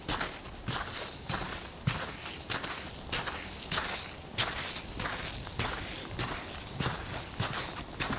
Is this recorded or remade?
recorded